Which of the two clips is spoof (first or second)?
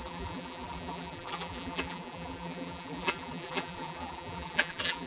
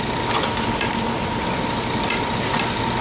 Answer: first